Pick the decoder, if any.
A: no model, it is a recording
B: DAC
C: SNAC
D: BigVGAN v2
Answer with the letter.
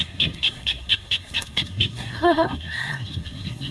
C